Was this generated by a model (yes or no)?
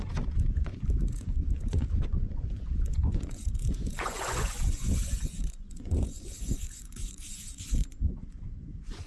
yes